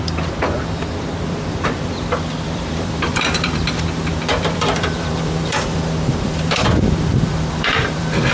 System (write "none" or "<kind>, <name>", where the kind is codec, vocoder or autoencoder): vocoder, BigVGAN v2